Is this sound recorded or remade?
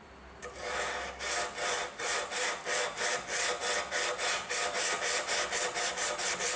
recorded